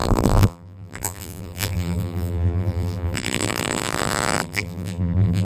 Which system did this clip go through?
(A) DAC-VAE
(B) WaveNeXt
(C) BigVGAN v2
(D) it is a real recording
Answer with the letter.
C